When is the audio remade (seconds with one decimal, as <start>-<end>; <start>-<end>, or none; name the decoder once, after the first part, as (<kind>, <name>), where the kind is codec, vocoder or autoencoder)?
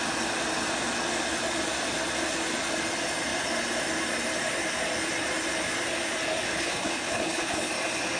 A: 6.5-7.7 (codec, HILCodec)